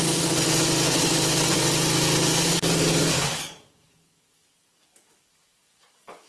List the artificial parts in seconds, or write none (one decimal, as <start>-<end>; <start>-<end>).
2.3-6.3

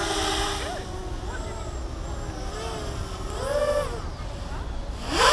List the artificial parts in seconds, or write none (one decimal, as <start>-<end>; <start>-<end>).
none

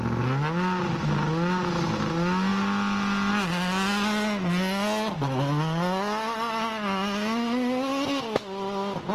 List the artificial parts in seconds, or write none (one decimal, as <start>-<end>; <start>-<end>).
none

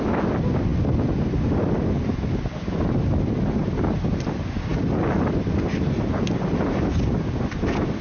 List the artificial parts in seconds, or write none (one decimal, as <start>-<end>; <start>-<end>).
none

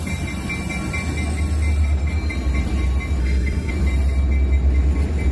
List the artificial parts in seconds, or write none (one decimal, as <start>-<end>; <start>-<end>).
3.2-3.7

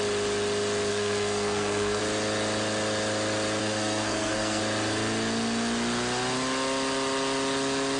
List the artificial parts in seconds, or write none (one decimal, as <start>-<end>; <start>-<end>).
0.9-2.0; 3.6-4.6